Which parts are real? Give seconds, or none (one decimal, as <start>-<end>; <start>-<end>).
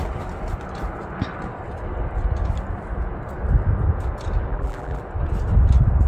0.0-4.5; 5.0-6.1